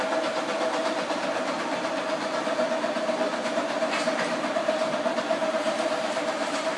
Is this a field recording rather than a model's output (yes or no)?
no